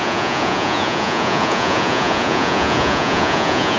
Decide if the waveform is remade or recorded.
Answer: remade